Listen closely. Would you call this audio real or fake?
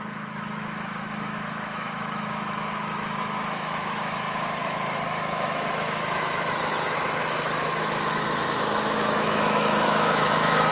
fake